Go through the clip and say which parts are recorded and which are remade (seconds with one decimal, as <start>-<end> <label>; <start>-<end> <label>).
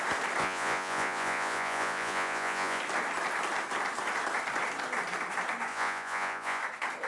0.0-0.4 recorded; 0.4-2.8 remade; 2.8-5.7 recorded; 5.7-6.6 remade; 6.6-7.1 recorded